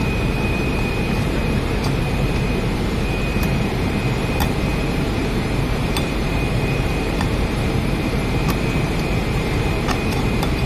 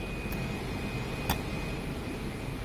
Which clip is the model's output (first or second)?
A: first